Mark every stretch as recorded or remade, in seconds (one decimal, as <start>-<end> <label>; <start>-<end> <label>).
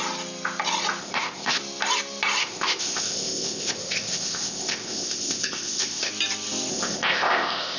0.0-1.0 recorded; 1.0-1.6 remade; 1.6-2.4 recorded; 2.4-6.1 remade; 6.1-6.7 recorded; 6.7-7.8 remade